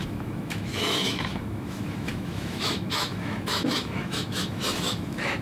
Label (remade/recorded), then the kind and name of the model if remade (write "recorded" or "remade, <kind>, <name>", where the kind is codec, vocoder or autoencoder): remade, autoencoder, DAC-VAE